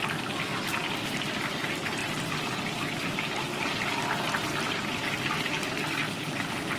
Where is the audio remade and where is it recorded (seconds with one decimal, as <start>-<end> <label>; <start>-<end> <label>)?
0.0-6.8 recorded

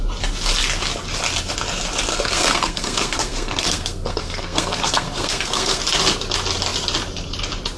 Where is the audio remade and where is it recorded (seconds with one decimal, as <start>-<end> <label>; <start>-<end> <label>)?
0.0-2.1 recorded; 2.1-5.8 remade; 5.8-7.8 recorded

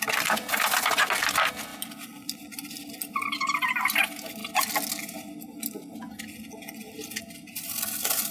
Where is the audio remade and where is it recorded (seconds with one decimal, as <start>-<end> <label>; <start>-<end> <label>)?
0.0-1.7 recorded; 1.7-2.7 remade; 2.7-8.3 recorded

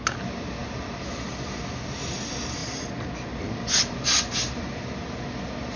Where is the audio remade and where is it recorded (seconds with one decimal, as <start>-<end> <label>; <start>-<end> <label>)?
0.0-5.8 recorded

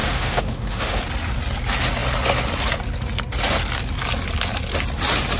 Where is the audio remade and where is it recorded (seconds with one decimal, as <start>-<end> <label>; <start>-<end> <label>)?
0.0-1.0 remade; 1.0-5.4 recorded